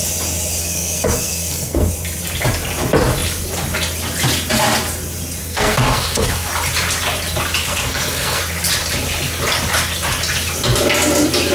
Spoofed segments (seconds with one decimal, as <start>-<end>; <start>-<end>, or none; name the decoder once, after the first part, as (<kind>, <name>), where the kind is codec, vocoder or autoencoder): 0.6-1.9 (codec, SNAC); 5.4-6.5; 7.6-8.4